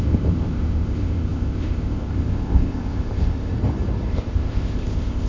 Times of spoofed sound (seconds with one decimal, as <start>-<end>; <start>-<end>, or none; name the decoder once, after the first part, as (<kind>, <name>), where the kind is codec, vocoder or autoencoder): 0.0-3.5 (codec, ZipCodec); 4.1-5.3